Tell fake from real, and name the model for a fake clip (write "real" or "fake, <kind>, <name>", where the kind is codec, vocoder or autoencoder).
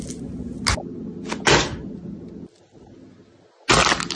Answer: real